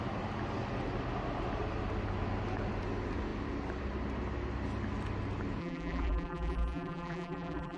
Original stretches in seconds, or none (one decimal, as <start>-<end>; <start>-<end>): 0.0-5.6